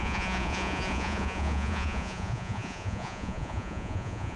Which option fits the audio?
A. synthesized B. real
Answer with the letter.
A